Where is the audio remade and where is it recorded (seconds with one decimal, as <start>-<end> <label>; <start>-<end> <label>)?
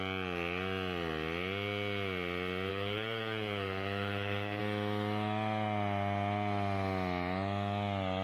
0.0-2.7 recorded; 2.7-4.6 remade; 4.6-8.2 recorded